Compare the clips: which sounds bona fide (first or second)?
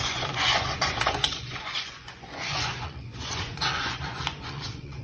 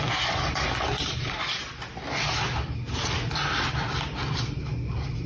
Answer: second